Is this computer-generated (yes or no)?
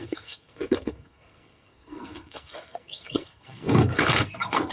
yes